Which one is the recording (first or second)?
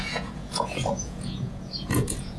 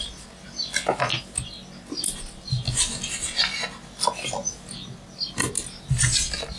second